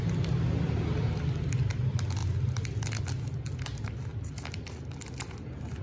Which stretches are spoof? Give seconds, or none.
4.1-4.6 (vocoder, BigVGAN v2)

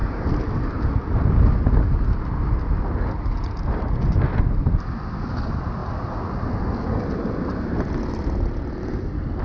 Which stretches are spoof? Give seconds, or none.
none

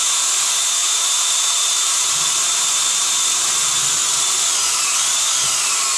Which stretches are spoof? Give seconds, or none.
0.8-4.3 (vocoder, BigVGAN v2)